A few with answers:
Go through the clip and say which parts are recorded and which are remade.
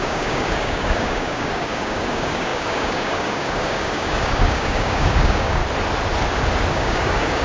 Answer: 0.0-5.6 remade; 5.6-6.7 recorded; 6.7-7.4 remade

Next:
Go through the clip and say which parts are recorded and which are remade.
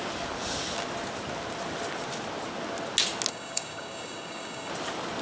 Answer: 0.0-3.3 recorded; 3.3-4.7 remade; 4.7-5.2 recorded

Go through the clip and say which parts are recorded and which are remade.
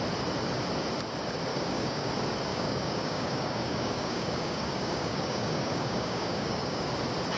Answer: 0.0-1.5 recorded; 1.5-2.1 remade; 2.1-2.5 recorded; 2.5-6.9 remade; 6.9-7.4 recorded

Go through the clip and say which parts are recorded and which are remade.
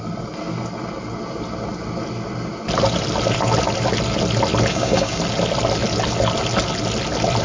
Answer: 0.0-4.7 recorded; 4.7-5.2 remade; 5.2-7.4 recorded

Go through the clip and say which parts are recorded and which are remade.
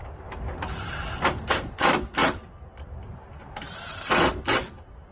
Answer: 0.0-5.1 recorded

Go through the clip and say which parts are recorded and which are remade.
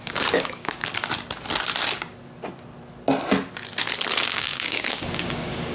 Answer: 0.0-0.9 remade; 0.9-4.2 recorded; 4.2-5.7 remade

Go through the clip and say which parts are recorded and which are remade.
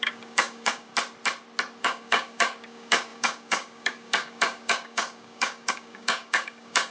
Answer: 0.0-0.9 remade; 0.9-1.8 recorded; 1.8-6.9 remade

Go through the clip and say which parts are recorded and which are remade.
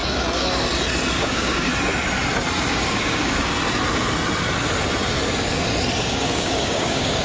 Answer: 0.0-1.2 recorded; 1.2-1.7 remade; 1.7-2.7 recorded; 2.7-3.5 remade; 3.5-6.0 recorded; 6.0-7.2 remade